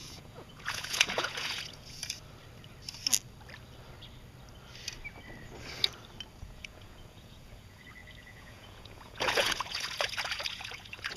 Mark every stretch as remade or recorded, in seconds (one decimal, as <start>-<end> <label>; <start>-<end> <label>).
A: 0.0-2.0 remade; 2.0-6.4 recorded; 6.4-11.2 remade